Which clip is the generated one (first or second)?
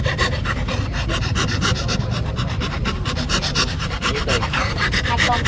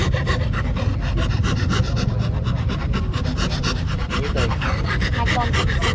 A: first